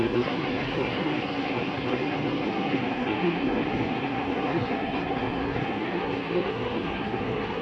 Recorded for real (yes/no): no